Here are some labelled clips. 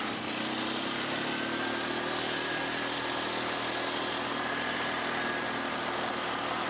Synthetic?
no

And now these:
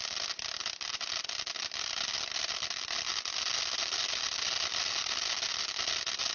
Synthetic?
no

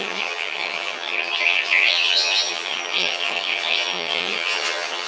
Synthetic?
yes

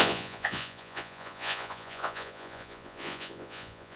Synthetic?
yes